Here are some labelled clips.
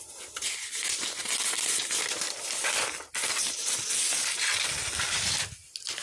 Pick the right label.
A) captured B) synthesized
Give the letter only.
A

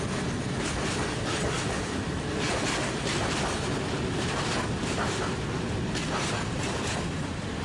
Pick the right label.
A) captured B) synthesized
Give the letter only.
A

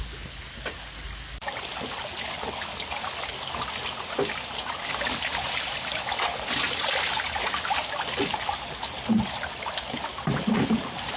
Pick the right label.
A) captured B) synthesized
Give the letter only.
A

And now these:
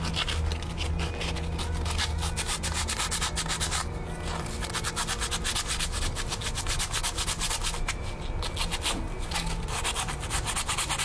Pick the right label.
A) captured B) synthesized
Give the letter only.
A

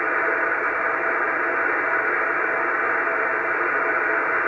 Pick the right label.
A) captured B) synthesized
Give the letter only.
A